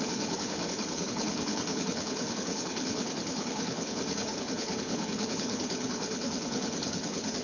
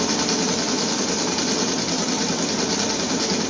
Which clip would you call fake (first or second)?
first